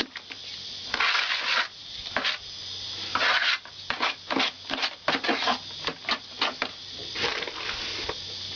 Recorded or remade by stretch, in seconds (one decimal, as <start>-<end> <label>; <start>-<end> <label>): 0.0-8.6 recorded

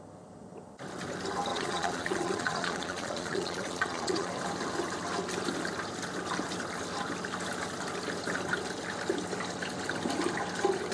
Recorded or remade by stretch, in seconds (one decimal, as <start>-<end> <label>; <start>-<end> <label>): 0.0-1.5 recorded; 1.5-4.3 remade; 4.3-10.9 recorded